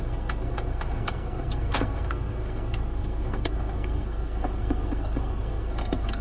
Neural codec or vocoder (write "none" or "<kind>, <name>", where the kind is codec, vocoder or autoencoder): codec, SNAC